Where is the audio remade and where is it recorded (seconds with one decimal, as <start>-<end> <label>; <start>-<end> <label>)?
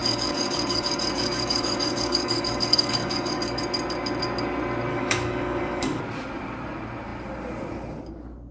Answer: 0.0-3.6 remade; 3.6-4.9 recorded; 4.9-6.0 remade; 6.0-8.5 recorded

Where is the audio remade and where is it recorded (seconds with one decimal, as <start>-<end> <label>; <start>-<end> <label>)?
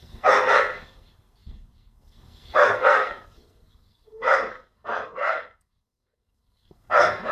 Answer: 0.0-7.3 remade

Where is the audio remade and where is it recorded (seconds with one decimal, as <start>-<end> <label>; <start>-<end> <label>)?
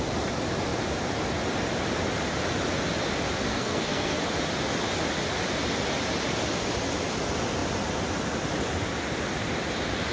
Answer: 0.0-3.5 recorded; 3.5-4.2 remade; 4.2-10.1 recorded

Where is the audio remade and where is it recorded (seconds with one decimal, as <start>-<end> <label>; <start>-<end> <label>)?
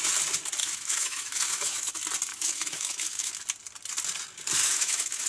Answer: 0.0-0.6 recorded; 0.6-1.9 remade; 1.9-2.3 recorded; 2.3-3.4 remade; 3.4-4.6 recorded; 4.6-5.3 remade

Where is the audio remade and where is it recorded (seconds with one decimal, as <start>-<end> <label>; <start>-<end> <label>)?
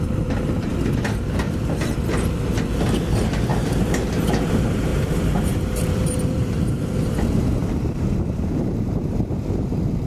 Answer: 0.0-3.5 recorded; 3.5-4.2 remade; 4.2-4.9 recorded; 4.9-6.8 remade; 6.8-7.6 recorded; 7.6-9.1 remade; 9.1-10.1 recorded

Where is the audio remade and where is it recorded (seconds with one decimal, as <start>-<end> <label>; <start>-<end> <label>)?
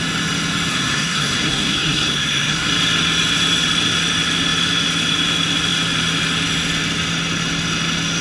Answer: 0.0-0.7 recorded; 0.7-2.7 remade; 2.7-8.2 recorded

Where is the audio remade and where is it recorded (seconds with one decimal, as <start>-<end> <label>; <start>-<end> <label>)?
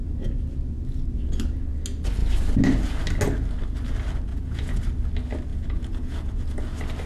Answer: 0.0-4.3 recorded; 4.3-4.8 remade; 4.8-5.5 recorded; 5.5-6.4 remade; 6.4-7.1 recorded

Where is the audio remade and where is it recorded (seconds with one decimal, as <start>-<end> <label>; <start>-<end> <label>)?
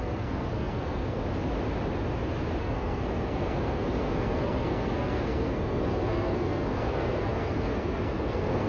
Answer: 0.0-1.2 remade; 1.2-2.6 recorded; 2.6-8.7 remade